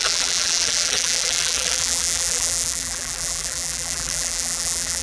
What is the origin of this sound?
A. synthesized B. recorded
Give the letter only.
A